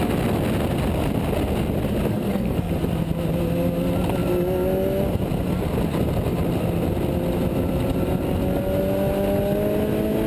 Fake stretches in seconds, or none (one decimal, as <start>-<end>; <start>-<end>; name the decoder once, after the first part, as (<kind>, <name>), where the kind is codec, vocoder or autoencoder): 2.1-2.7 (codec, SNAC)

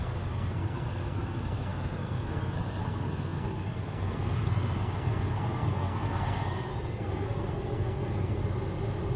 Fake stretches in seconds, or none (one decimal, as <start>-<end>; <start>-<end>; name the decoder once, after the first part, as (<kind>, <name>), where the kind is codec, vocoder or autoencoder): 0.0-8.4 (codec, SNAC)